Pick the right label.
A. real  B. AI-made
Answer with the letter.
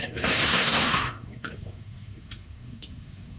B